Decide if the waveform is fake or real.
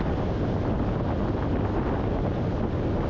real